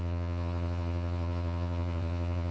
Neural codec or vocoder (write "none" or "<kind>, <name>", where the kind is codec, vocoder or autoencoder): vocoder, Vocos